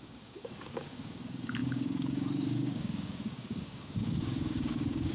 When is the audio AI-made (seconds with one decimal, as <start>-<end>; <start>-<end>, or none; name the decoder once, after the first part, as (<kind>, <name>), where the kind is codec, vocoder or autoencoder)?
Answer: 0.0-5.1 (codec, DAC)